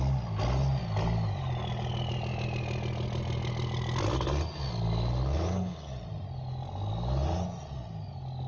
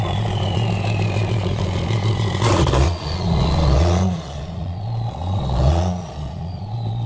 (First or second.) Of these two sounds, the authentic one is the first